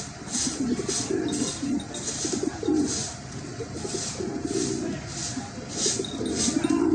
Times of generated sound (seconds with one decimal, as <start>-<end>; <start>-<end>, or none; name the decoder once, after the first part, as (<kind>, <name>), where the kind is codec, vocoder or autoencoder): none